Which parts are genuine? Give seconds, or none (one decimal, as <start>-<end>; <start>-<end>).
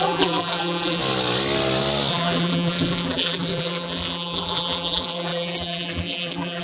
1.0-2.1